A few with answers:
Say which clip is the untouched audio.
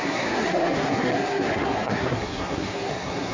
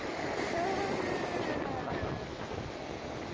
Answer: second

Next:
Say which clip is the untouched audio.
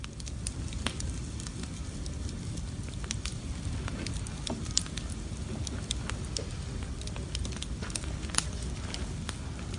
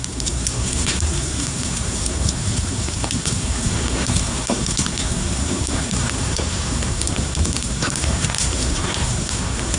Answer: first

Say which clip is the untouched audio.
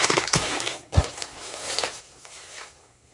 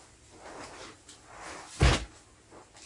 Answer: second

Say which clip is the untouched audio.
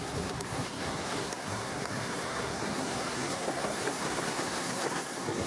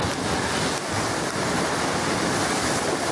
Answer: second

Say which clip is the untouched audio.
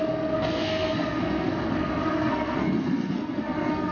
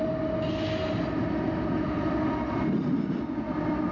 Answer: second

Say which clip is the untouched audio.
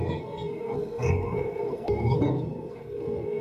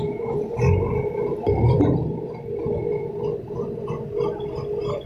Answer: second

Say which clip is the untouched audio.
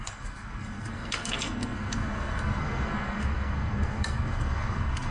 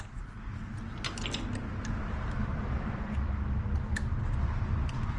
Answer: second